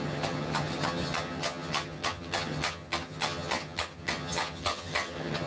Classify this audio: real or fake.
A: fake